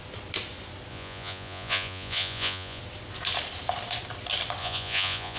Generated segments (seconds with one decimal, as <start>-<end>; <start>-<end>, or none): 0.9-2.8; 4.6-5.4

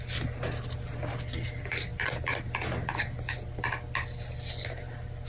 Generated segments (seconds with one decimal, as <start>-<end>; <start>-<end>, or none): none

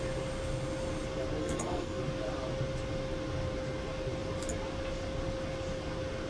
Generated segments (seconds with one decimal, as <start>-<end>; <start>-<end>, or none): 1.4-2.0

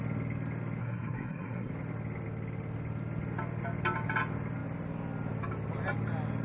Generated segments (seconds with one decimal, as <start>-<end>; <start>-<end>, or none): 0.8-1.7